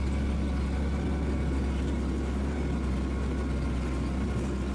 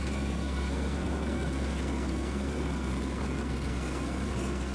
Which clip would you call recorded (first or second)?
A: first